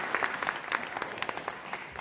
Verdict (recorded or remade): recorded